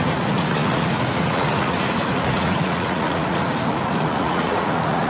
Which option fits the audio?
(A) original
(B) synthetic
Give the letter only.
B